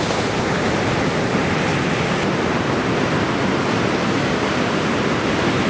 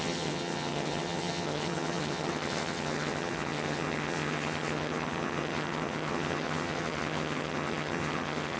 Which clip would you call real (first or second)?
first